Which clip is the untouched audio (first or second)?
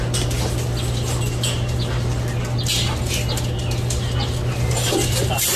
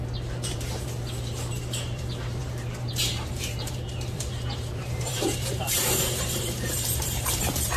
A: first